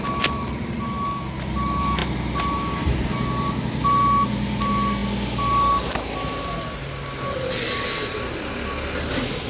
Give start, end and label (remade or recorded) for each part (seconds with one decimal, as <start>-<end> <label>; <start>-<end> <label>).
0.0-9.5 recorded